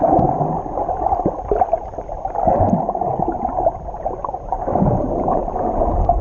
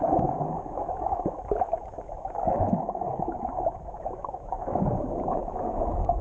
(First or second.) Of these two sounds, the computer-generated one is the second